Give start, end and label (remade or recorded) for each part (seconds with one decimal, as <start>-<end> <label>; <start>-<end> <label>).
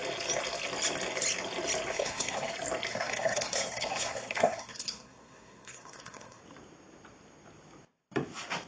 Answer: 0.0-1.9 recorded; 1.9-2.5 remade; 2.5-2.9 recorded; 2.9-6.4 remade; 6.4-8.7 recorded